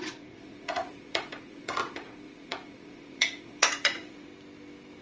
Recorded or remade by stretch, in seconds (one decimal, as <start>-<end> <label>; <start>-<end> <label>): 0.0-4.3 remade; 4.3-5.0 recorded